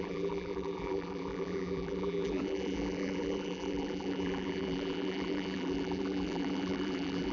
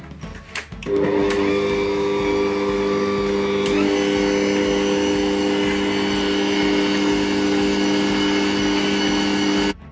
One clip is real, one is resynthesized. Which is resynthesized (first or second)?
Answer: first